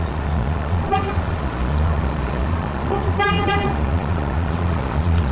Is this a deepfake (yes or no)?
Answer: yes